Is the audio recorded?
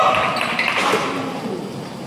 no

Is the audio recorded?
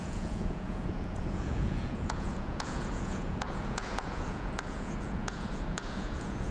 no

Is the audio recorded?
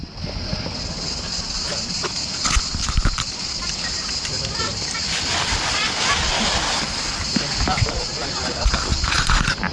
yes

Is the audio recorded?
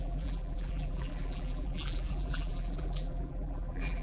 no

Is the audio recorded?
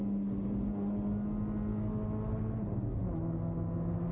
yes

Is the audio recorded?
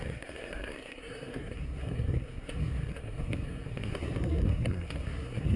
no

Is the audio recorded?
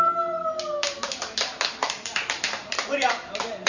no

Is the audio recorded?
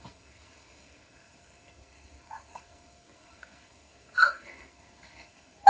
no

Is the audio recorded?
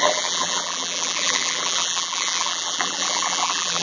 no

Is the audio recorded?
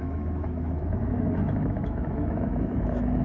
no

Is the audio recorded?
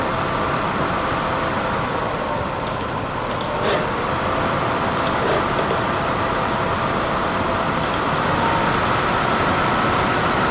yes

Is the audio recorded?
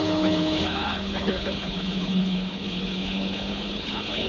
no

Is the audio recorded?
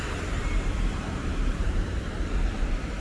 no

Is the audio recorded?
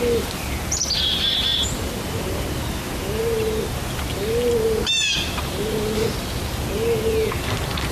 yes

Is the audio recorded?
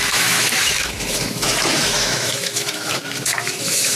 no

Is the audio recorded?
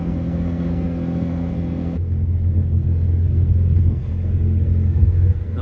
no